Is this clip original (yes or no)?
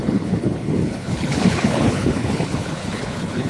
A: no